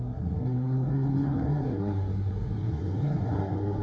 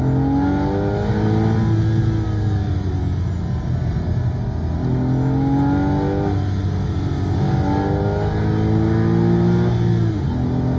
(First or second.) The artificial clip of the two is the first